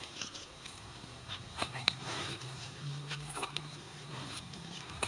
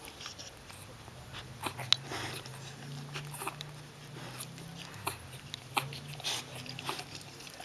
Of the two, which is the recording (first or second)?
second